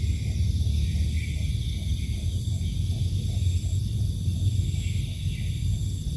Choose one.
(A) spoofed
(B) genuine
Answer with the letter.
B